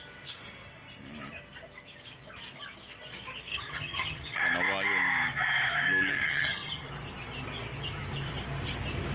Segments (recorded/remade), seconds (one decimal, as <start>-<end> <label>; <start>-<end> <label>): 0.0-3.5 recorded; 3.5-4.4 remade; 4.4-6.1 recorded; 6.1-6.9 remade; 6.9-9.1 recorded